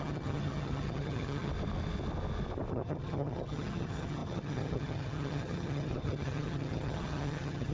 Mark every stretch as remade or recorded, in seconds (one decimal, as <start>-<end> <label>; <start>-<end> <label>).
0.0-1.5 remade; 1.5-2.7 recorded; 2.7-7.7 remade